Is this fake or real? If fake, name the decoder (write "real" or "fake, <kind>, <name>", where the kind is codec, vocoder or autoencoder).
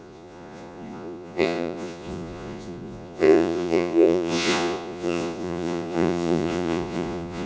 fake, vocoder, Vocos